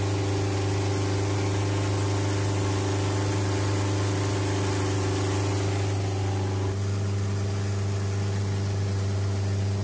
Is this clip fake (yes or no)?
no